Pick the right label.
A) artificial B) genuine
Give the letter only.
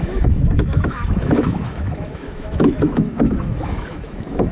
A